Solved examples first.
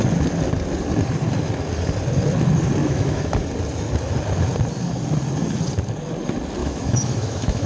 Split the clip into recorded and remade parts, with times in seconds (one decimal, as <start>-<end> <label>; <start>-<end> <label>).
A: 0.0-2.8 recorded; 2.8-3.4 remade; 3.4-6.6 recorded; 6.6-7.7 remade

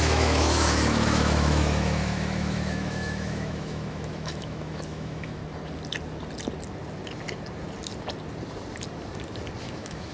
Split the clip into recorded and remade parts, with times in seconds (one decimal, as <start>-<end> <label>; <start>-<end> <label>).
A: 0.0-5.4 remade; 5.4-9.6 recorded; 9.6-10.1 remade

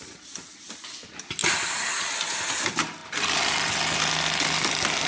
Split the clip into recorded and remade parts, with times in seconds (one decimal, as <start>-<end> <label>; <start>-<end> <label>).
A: 0.0-5.1 recorded

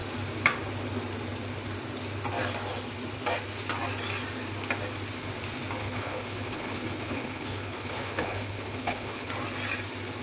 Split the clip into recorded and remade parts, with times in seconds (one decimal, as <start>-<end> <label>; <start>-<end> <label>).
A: 0.0-5.8 recorded; 5.8-9.3 remade; 9.3-10.2 recorded

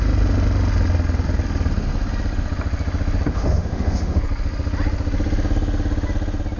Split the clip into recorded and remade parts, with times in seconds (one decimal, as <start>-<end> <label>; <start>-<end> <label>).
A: 0.0-3.3 recorded; 3.3-4.2 remade; 4.2-6.6 recorded